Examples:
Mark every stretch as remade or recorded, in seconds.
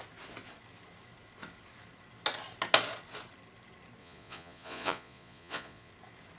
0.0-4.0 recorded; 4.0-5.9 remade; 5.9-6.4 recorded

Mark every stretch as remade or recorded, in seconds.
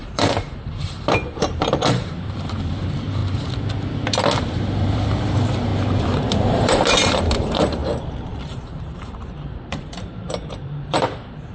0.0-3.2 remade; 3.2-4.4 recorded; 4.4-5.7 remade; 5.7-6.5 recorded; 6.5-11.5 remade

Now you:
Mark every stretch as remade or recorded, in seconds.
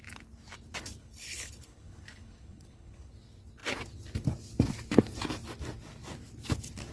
0.0-1.0 recorded; 1.0-3.1 remade; 3.1-6.9 recorded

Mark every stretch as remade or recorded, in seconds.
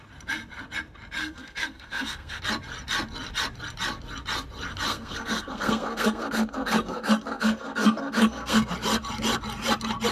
0.0-1.2 recorded; 1.2-2.4 remade; 2.4-4.9 recorded; 4.9-8.7 remade; 8.7-10.1 recorded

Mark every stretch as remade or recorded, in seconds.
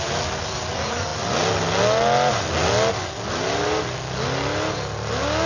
0.0-5.5 recorded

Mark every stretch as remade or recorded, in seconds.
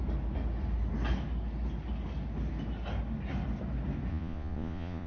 0.0-4.1 recorded; 4.1-5.1 remade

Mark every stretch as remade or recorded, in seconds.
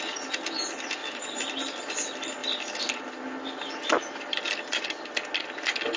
0.0-6.0 recorded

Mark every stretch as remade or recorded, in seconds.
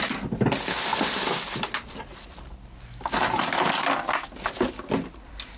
0.0-0.9 recorded; 0.9-4.3 remade; 4.3-5.6 recorded